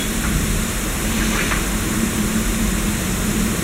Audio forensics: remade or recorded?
remade